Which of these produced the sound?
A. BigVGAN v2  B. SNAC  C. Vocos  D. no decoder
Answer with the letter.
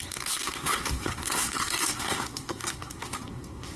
B